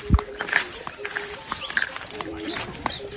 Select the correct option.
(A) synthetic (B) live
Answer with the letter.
A